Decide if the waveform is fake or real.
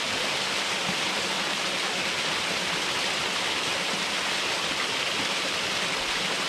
real